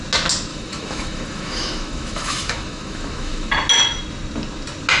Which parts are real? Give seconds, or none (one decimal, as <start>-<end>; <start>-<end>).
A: 0.0-0.5; 3.5-5.0